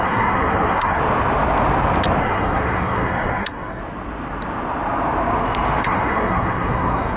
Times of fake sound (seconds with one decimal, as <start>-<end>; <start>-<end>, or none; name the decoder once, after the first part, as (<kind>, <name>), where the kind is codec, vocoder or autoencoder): 0.0-1.0 (codec, SNAC); 2.2-3.8; 5.8-7.2